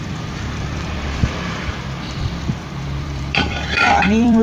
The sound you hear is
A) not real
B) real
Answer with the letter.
A